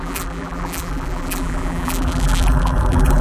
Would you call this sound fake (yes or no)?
yes